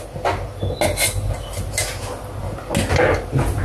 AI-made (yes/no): no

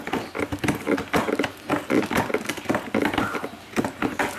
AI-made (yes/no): no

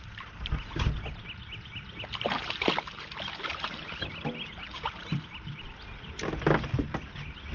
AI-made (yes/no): no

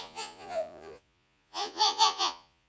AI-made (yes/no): yes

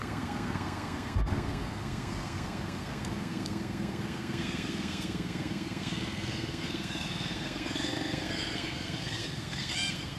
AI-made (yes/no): yes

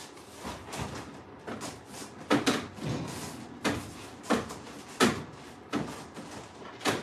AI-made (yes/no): no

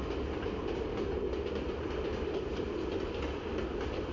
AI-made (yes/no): no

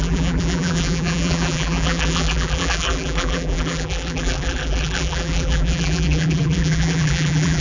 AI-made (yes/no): yes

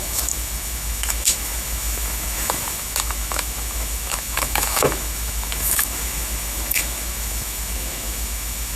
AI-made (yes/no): yes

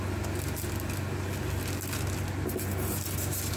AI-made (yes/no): no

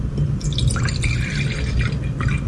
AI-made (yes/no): no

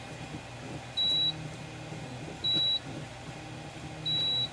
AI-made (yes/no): no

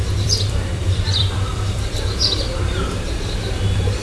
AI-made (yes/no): yes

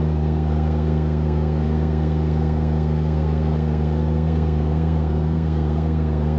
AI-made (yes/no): yes